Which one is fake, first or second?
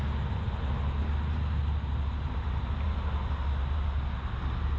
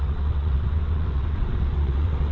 second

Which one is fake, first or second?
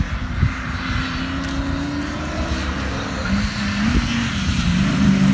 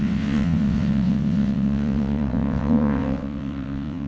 second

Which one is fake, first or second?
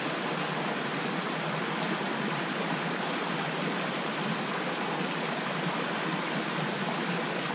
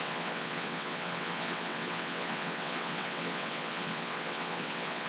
second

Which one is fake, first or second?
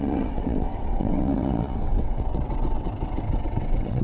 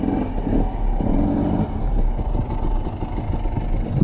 first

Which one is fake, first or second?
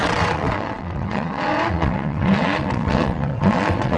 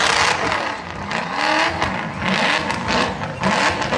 first